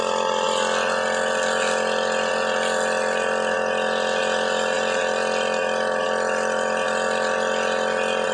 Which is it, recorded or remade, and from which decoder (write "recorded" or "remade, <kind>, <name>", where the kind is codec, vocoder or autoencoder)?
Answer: recorded